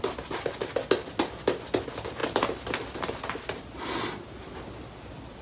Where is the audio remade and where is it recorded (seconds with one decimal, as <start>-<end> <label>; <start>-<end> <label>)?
0.0-5.4 recorded